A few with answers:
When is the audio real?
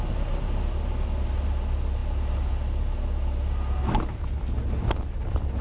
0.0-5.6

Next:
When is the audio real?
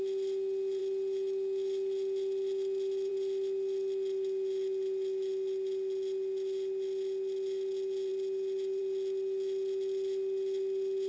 0.0-11.1